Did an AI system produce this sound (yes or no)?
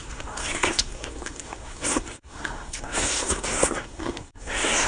yes